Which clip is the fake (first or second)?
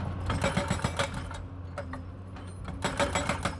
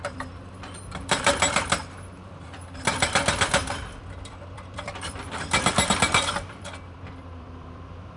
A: second